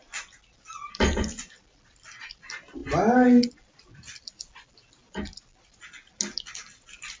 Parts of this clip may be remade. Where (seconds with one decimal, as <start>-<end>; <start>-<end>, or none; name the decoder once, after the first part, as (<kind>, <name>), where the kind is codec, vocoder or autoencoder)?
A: none